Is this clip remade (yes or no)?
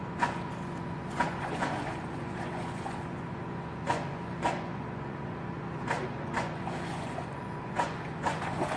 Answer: yes